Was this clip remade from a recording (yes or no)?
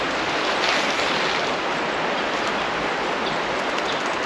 no